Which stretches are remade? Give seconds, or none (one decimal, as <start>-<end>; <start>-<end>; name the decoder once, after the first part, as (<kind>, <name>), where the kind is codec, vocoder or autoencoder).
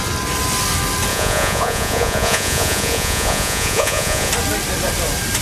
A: 1.1-4.3 (vocoder, Vocos)